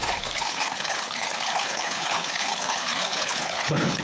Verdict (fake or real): fake